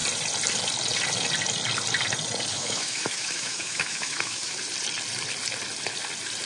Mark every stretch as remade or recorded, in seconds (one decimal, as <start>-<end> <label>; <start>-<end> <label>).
0.0-2.5 recorded; 2.5-4.6 remade; 4.6-6.5 recorded